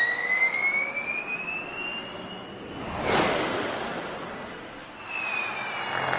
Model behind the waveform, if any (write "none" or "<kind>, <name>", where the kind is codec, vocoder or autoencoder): none